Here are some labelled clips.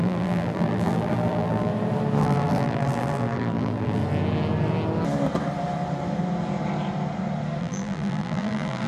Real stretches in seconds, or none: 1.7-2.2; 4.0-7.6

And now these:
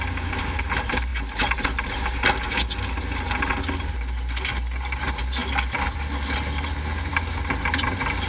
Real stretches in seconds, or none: 0.0-5.4; 6.0-8.3

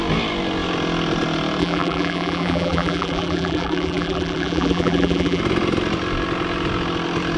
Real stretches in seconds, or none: 0.0-1.6; 5.4-7.4

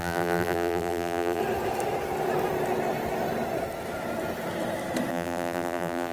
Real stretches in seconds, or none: 1.4-5.1

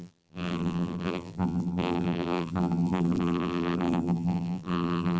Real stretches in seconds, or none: none

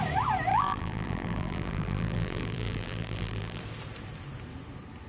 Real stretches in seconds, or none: 0.0-0.5; 3.6-5.1

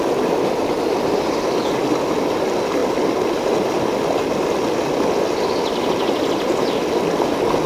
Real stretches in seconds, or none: 0.0-7.7